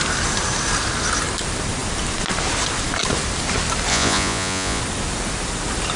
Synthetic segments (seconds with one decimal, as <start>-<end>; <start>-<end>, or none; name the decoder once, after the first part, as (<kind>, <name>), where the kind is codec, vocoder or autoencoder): 3.9-4.8 (vocoder, Vocos)